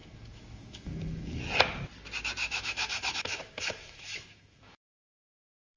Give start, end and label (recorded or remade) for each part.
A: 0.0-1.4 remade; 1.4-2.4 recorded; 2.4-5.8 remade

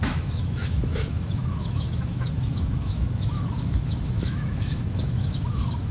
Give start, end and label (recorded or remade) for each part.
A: 0.0-5.9 remade

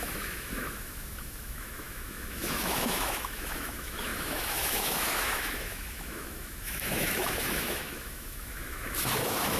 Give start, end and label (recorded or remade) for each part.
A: 0.0-9.6 remade

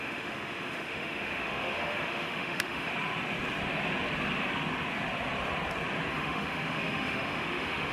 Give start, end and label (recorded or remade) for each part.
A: 0.0-2.9 remade; 2.9-6.1 recorded; 6.1-7.9 remade

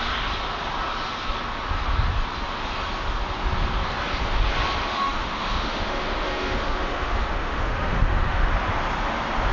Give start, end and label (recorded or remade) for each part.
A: 0.0-4.8 recorded; 4.8-8.5 remade; 8.5-9.5 recorded

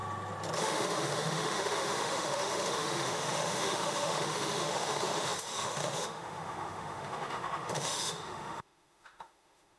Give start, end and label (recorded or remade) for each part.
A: 0.0-0.6 recorded; 0.6-9.8 remade

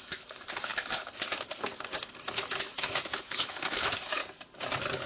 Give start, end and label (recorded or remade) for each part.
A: 0.0-0.7 remade; 0.7-2.2 recorded; 2.2-4.2 remade; 4.2-5.1 recorded

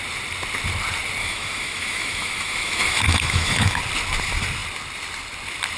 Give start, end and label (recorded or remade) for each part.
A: 0.0-1.2 recorded; 1.2-3.8 remade; 3.8-5.8 recorded